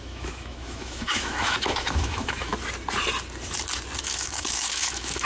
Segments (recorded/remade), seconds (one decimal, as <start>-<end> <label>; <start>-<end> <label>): 0.0-2.5 remade; 2.5-4.0 recorded; 4.0-5.2 remade